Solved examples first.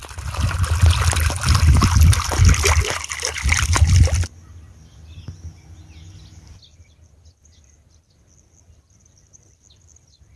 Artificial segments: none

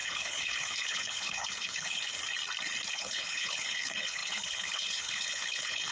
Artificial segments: 0.0-2.2; 2.9-5.9

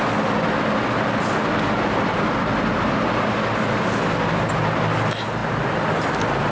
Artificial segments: none

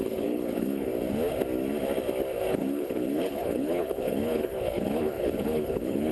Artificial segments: 0.0-0.9; 2.5-6.1